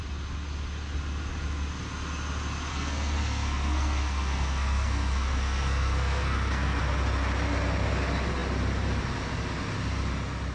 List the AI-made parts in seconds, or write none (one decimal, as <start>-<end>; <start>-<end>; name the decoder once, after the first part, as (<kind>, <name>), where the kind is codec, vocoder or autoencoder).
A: 2.7-6.8 (codec, SNAC)